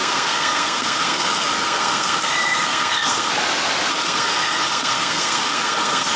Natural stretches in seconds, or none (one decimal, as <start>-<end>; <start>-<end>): 3.3-3.9